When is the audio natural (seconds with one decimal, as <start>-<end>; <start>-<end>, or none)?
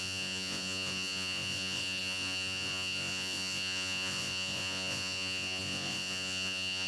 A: none